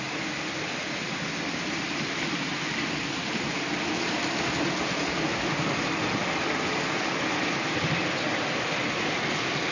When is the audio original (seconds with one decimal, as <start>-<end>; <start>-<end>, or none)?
0.0-9.7